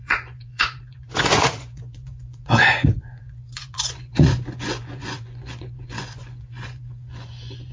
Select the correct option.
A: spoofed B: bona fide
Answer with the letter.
A